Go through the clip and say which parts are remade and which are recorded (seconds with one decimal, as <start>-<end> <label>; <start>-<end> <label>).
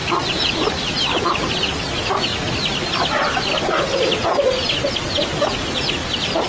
0.0-0.8 remade; 0.8-6.5 recorded